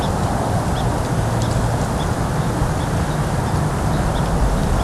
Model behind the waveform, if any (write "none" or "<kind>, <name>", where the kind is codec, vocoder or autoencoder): none